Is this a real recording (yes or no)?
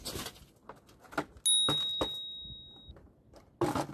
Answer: yes